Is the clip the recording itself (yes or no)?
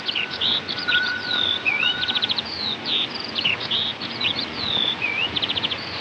no